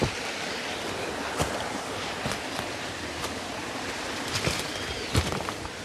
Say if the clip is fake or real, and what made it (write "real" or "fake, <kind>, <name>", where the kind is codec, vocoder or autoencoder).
real